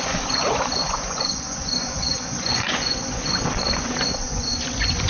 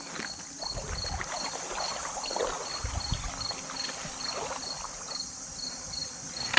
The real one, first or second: second